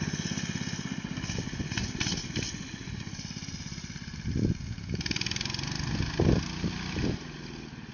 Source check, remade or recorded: recorded